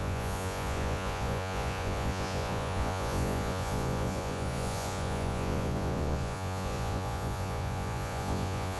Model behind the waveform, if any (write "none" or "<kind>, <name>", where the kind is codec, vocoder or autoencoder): vocoder, Vocos